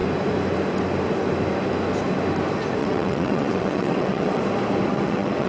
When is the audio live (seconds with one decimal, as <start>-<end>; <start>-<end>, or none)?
0.0-2.8; 4.4-4.9